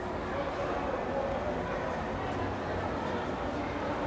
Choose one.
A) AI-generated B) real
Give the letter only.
B